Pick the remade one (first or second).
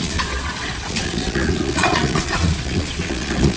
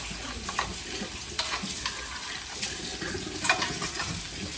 first